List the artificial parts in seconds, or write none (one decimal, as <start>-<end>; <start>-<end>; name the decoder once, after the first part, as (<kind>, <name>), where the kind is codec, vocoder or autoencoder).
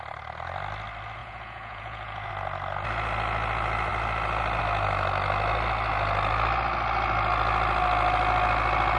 1.2-2.3 (vocoder, Vocos)